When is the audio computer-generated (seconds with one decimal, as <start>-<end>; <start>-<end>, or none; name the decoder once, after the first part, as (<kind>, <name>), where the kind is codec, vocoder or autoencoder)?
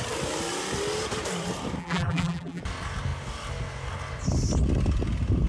1.8-2.6 (vocoder, BigVGAN v2)